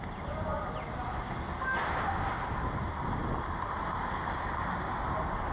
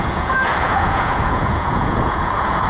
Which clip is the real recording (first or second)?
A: first